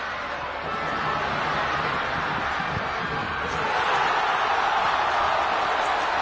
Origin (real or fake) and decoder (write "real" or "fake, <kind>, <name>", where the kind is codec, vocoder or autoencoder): real